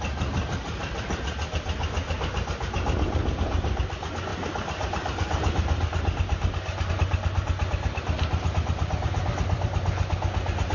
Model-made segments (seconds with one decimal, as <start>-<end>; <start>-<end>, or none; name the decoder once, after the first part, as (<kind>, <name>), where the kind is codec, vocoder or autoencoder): none